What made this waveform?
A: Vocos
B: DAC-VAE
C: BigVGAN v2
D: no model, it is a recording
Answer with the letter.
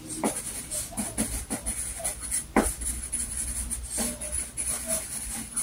D